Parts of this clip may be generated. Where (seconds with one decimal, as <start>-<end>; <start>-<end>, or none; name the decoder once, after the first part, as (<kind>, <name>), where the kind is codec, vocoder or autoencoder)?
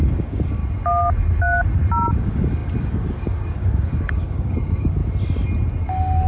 0.0-0.6 (codec, DAC); 2.1-5.0; 5.8-6.3